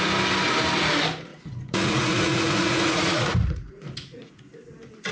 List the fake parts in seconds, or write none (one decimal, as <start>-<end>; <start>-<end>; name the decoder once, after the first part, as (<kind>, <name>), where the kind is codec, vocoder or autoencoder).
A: 1.3-4.4 (vocoder, Vocos)